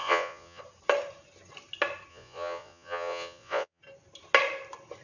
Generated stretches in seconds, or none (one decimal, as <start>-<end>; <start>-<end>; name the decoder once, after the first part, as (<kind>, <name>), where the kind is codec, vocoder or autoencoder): 0.0-0.6 (vocoder, Vocos); 2.1-3.8